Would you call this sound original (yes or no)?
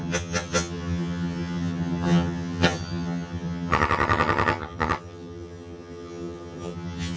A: no